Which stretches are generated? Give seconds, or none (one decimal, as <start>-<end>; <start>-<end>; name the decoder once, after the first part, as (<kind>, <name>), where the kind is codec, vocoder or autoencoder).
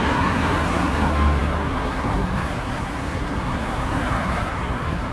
0.0-5.1 (codec, SNAC)